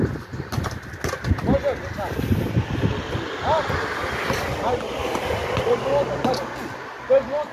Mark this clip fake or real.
real